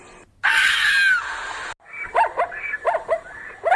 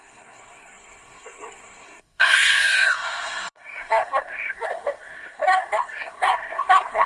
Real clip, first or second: first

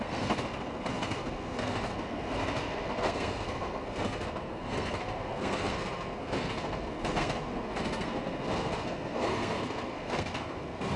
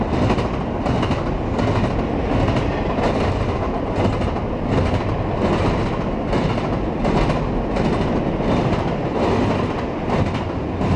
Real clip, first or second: second